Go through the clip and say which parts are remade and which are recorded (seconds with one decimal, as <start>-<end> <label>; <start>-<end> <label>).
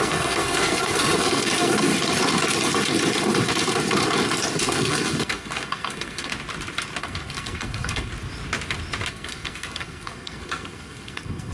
0.0-1.9 remade; 1.9-4.6 recorded; 4.6-6.3 remade; 6.3-7.0 recorded; 7.0-8.1 remade; 8.1-9.1 recorded; 9.1-11.5 remade